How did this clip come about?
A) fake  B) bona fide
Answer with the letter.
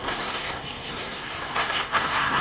A